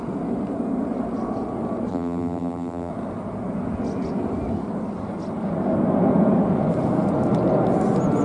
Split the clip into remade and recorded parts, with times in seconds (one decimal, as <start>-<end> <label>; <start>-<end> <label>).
0.0-1.9 recorded; 1.9-2.9 remade; 2.9-8.2 recorded